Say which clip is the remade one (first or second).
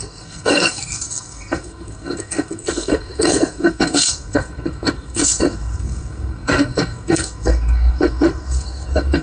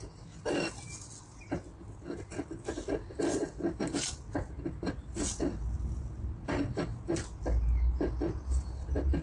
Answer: first